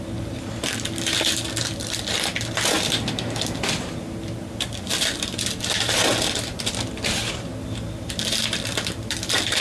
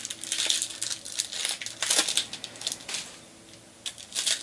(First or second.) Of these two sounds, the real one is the second